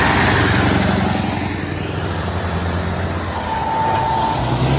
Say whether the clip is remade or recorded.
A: recorded